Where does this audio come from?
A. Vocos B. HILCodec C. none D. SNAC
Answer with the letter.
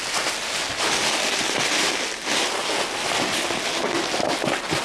C